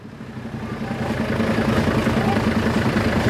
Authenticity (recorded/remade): recorded